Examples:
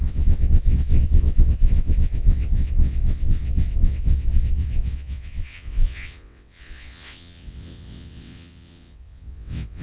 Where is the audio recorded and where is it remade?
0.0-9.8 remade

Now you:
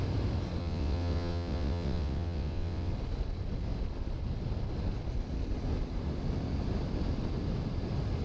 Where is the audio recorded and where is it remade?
0.0-0.6 recorded; 0.6-2.9 remade; 2.9-8.2 recorded

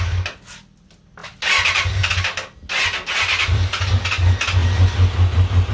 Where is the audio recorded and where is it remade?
0.0-5.7 recorded

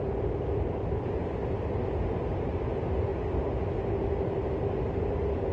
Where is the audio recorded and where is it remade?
0.0-5.5 recorded

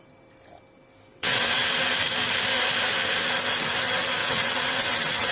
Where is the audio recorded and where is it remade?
0.0-1.1 recorded; 1.1-1.7 remade; 1.7-4.2 recorded; 4.2-5.3 remade